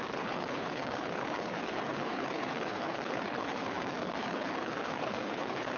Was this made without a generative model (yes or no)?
no